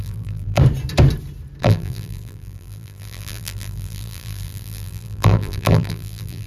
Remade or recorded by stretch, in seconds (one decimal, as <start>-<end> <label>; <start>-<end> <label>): 0.0-0.6 remade; 0.6-1.6 recorded; 1.6-6.5 remade